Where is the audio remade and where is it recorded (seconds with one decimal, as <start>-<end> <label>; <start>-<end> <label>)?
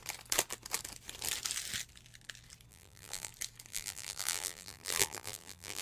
0.0-2.7 recorded; 2.7-3.3 remade; 3.3-3.7 recorded; 3.7-5.8 remade